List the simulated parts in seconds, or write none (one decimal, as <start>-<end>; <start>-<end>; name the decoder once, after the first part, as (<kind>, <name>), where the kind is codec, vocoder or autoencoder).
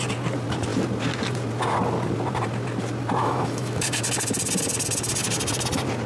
3.2-4.0 (autoencoder, DAC-VAE)